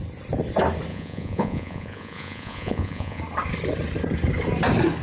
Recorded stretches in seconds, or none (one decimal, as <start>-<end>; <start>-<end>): 0.0-0.9; 3.2-5.0